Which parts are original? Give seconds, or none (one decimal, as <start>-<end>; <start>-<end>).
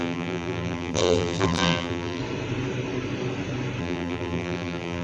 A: 2.2-3.8